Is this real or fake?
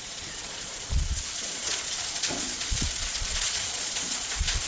fake